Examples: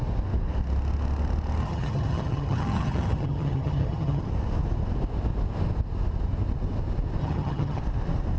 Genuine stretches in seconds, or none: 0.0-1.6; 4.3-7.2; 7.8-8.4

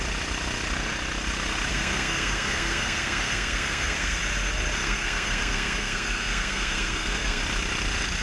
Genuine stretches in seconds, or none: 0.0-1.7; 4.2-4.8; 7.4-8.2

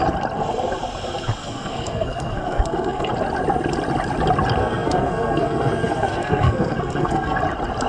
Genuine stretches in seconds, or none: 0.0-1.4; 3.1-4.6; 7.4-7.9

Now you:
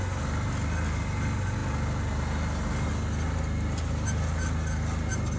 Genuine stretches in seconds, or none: 0.0-5.4

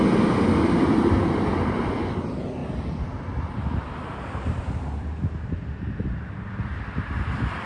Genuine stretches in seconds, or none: 2.6-3.5